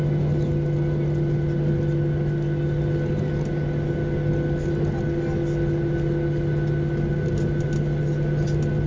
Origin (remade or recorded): recorded